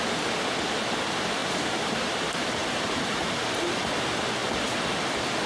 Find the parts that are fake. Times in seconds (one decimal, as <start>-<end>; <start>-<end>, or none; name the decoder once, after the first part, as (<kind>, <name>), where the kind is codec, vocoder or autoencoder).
1.4-2.2 (vocoder, BigVGAN v2); 2.6-3.3